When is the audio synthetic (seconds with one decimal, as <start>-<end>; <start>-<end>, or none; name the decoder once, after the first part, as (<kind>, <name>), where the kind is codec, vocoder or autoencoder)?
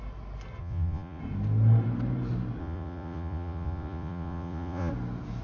0.6-1.2 (vocoder, Vocos); 2.6-4.9